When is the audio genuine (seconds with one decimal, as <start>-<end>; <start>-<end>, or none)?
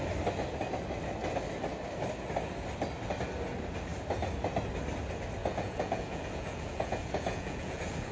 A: 0.0-5.4